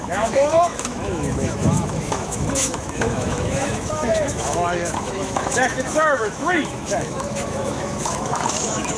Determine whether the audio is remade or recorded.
remade